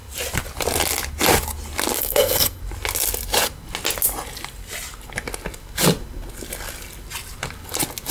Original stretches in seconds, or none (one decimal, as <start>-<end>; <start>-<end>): 0.0-2.0; 2.6-8.1